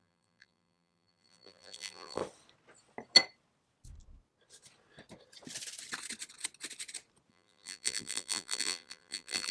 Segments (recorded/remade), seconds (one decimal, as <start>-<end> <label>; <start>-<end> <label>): 0.0-2.2 remade; 2.2-7.3 recorded; 7.3-9.5 remade